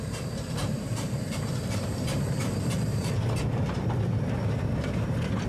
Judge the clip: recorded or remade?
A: remade